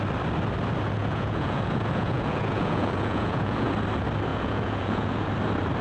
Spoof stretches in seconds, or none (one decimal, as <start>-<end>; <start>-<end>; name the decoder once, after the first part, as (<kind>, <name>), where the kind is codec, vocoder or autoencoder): 1.0-3.7 (vocoder, Vocos); 4.3-5.3